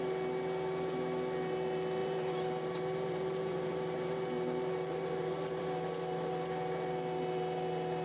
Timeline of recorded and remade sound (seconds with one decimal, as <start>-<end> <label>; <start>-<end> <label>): 0.0-2.0 recorded; 2.0-5.6 remade; 5.6-8.0 recorded